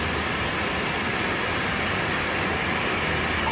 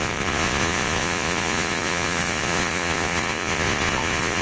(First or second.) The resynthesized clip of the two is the second